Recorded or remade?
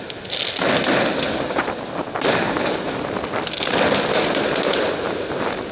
recorded